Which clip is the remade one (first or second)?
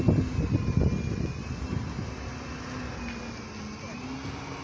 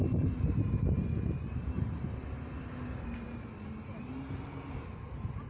second